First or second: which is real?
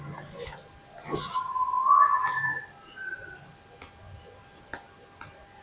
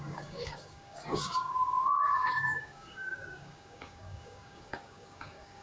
first